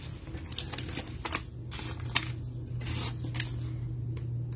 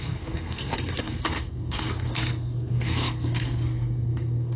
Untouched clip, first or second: first